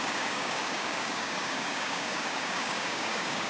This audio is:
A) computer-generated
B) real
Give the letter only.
A